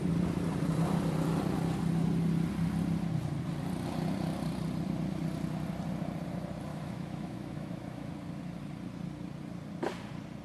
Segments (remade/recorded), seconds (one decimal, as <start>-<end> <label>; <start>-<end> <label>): 0.0-6.7 recorded; 6.7-8.1 remade; 8.1-10.4 recorded